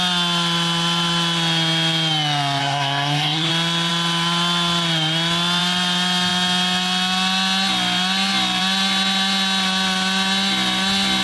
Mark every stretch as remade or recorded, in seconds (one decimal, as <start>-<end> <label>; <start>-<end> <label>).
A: 0.0-2.6 recorded; 2.6-3.5 remade; 3.5-11.2 recorded